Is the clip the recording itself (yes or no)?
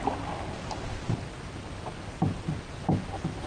yes